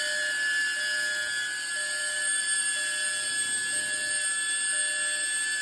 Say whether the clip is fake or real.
real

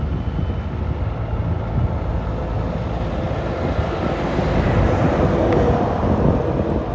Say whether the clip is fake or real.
real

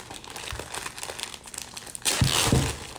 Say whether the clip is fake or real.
real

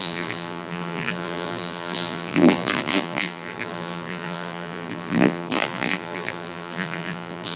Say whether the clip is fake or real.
fake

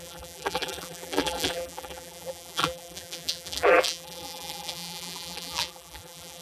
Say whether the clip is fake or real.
fake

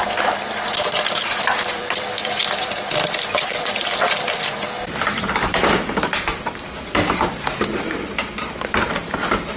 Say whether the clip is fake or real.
fake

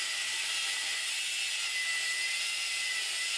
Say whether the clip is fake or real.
fake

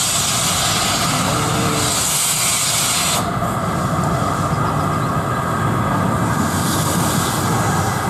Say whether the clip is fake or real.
real